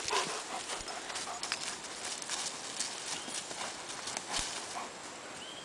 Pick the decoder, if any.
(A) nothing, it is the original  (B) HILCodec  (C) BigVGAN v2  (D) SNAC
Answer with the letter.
A